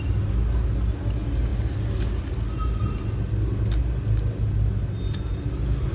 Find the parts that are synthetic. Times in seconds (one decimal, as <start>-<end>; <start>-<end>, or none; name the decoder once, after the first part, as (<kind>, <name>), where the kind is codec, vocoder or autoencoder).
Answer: none